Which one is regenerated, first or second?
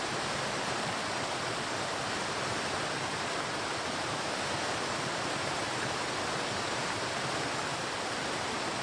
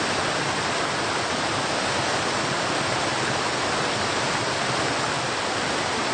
first